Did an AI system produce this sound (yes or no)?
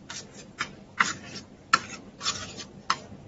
no